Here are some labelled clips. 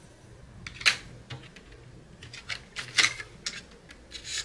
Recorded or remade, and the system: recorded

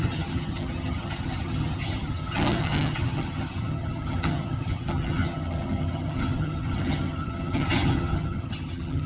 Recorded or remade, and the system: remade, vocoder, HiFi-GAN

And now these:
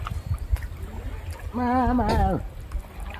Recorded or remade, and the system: recorded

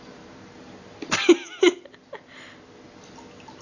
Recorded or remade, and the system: recorded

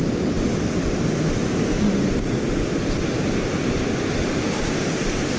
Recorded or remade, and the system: recorded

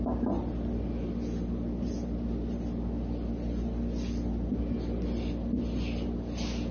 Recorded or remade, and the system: recorded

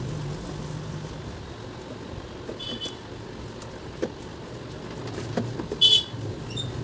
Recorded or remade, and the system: recorded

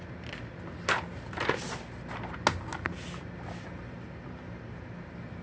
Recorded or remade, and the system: recorded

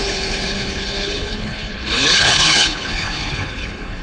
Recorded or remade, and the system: remade, codec, HILCodec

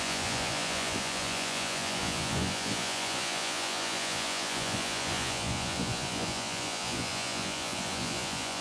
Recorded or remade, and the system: remade, vocoder, Vocos